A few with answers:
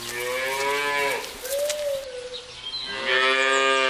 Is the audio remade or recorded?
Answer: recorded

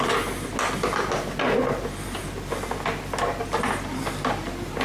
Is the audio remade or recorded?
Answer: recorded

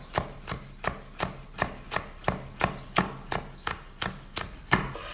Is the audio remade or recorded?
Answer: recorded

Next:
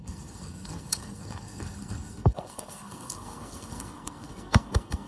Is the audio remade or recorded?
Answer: remade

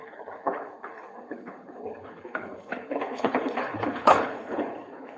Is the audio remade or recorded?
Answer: remade